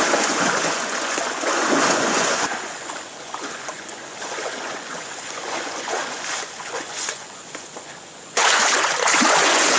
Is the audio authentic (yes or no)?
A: no